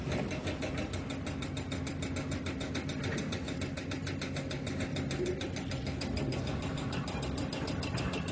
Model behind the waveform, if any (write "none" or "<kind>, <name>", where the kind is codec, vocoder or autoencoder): none